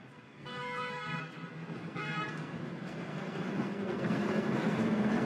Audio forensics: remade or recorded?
remade